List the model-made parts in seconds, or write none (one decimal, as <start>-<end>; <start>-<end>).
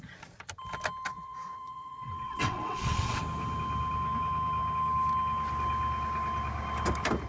1.1-3.2